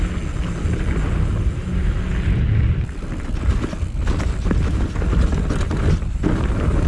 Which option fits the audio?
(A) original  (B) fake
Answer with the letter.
A